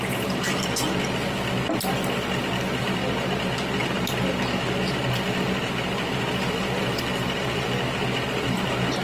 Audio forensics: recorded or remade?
recorded